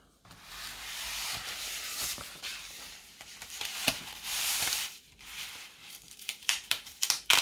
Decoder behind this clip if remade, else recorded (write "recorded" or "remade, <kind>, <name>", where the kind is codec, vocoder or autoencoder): remade, vocoder, BigVGAN v2